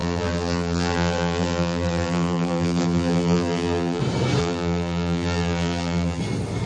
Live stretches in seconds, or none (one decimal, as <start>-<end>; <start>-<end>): 4.0-4.4; 6.2-6.7